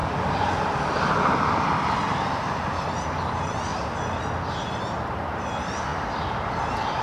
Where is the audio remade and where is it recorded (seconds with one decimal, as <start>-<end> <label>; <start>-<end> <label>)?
0.0-2.8 remade; 2.8-5.9 recorded; 5.9-6.5 remade; 6.5-7.0 recorded

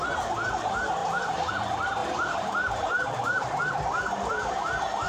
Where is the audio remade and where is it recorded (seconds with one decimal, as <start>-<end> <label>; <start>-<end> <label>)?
0.0-1.0 recorded; 1.0-1.5 remade; 1.5-2.0 recorded; 2.0-3.6 remade; 3.6-5.1 recorded

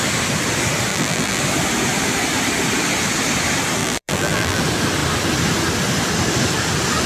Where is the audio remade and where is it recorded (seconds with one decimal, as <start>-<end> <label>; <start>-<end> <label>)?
0.0-0.9 recorded; 0.9-1.4 remade; 1.4-3.8 recorded; 3.8-4.6 remade; 4.6-7.1 recorded

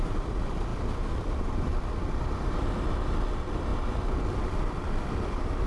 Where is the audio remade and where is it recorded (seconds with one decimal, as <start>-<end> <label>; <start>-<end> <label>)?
0.0-3.7 remade; 3.7-4.2 recorded; 4.2-5.7 remade

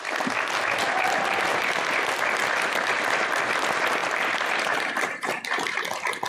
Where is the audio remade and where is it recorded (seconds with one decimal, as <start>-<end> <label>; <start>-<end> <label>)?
0.0-4.0 recorded; 4.0-5.8 remade; 5.8-6.3 recorded

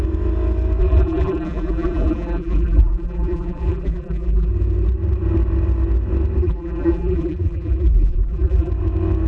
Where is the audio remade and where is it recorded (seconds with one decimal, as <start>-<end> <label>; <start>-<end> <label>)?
0.0-0.8 recorded; 0.8-4.5 remade; 4.5-6.4 recorded; 6.4-8.7 remade; 8.7-9.3 recorded

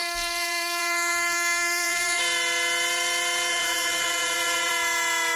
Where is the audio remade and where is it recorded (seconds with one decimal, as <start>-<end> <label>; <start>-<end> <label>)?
0.0-2.2 remade; 2.2-3.5 recorded; 3.5-4.7 remade; 4.7-5.4 recorded